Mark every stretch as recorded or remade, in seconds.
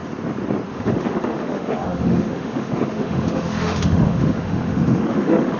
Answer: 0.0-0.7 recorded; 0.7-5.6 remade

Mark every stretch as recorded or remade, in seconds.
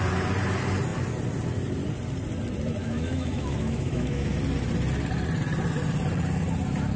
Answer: 0.0-2.8 recorded; 2.8-4.3 remade; 4.3-7.0 recorded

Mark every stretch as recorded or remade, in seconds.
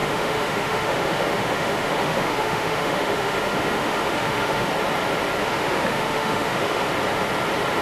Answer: 0.0-4.7 remade; 4.7-5.4 recorded; 5.4-6.8 remade; 6.8-7.8 recorded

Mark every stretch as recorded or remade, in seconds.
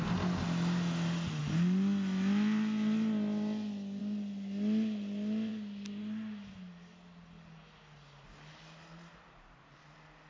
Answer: 0.0-10.3 recorded